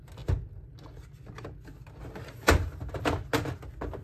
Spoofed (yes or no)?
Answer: no